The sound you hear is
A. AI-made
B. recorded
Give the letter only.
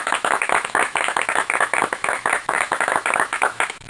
A